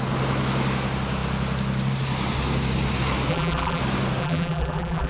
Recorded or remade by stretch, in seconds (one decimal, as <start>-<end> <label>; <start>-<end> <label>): 0.0-3.3 recorded; 3.3-3.8 remade; 3.8-4.2 recorded; 4.2-5.1 remade